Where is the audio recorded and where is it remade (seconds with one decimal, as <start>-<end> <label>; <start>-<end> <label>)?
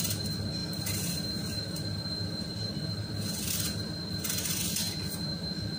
0.0-0.6 recorded; 0.6-4.1 remade; 4.1-5.8 recorded